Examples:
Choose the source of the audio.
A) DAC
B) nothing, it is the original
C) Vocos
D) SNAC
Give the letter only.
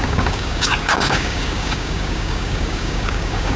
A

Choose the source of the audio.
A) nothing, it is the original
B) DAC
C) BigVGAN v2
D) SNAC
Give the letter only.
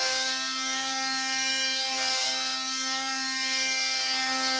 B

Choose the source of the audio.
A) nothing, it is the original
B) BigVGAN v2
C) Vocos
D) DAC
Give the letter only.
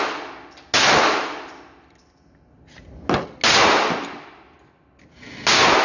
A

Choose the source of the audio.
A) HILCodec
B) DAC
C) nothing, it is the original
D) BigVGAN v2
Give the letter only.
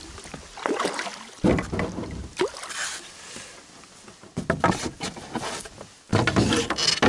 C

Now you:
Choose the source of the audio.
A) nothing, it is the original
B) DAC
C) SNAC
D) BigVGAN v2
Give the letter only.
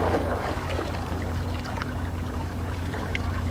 B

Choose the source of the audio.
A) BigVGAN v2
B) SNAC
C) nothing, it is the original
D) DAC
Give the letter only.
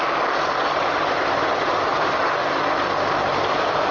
C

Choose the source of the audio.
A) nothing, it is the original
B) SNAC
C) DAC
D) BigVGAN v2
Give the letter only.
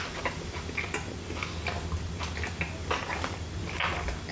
A